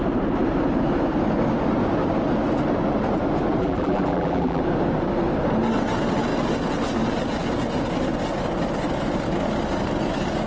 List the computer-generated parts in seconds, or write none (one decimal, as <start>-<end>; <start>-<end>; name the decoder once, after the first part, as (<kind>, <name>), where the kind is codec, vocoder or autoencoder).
3.6-4.6 (vocoder, BigVGAN v2)